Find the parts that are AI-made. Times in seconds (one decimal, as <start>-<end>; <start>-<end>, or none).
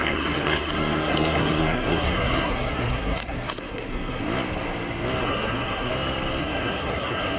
0.0-4.2; 5.2-5.9; 6.4-7.4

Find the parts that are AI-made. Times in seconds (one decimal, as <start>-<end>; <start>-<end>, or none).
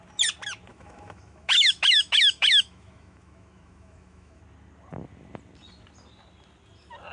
0.7-4.4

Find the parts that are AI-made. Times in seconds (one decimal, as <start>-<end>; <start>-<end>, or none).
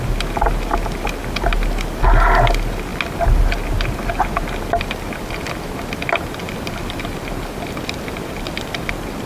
none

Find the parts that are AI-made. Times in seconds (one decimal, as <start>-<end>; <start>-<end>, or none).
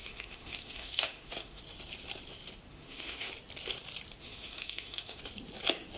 0.0-1.6; 2.7-3.3; 4.2-5.2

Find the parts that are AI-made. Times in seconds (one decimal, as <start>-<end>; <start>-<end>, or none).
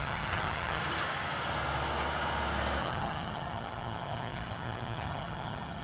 0.0-0.8; 2.8-5.8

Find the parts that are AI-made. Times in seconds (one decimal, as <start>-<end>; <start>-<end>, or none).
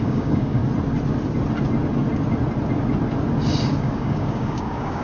0.0-0.6; 3.6-5.0